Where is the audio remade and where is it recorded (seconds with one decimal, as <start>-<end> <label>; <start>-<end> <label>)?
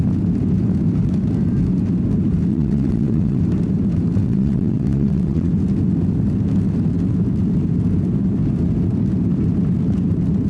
0.0-2.5 recorded; 2.5-3.4 remade; 3.4-4.2 recorded; 4.2-5.5 remade; 5.5-10.5 recorded